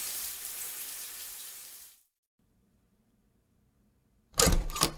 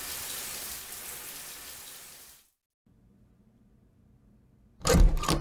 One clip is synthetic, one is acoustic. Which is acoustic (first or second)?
second